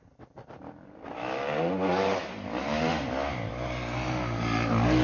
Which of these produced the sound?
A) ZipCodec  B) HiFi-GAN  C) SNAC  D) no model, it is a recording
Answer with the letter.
D